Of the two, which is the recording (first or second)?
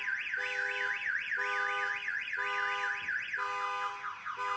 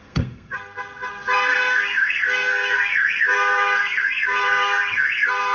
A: first